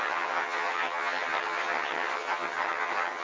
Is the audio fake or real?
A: fake